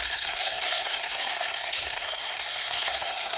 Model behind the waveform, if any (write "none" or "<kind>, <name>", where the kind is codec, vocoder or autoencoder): codec, SNAC